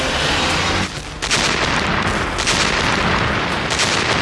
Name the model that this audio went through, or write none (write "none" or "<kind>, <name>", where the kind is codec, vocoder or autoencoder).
none